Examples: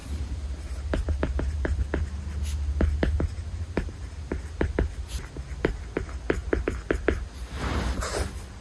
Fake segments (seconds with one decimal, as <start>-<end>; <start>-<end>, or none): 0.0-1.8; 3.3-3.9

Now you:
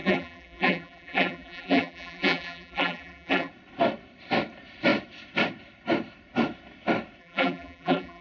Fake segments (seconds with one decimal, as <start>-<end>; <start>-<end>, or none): 0.0-3.5; 7.2-8.2

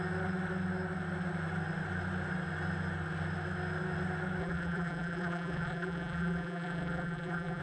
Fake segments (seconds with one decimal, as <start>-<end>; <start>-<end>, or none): 4.4-7.6

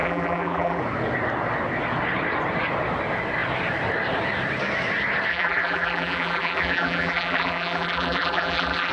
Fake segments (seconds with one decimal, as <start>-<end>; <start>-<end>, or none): 0.0-0.8; 5.3-8.9

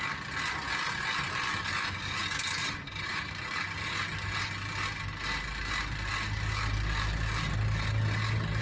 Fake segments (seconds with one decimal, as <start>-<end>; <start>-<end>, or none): 2.6-3.3